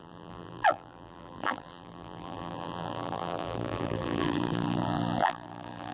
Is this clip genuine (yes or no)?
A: no